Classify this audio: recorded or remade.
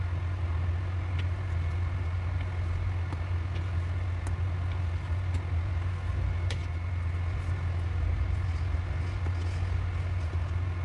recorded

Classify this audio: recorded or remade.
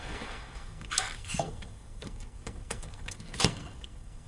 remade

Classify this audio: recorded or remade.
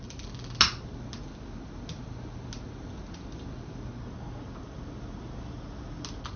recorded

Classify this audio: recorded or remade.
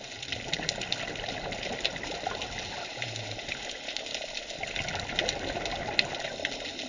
recorded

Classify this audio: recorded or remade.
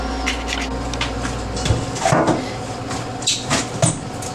recorded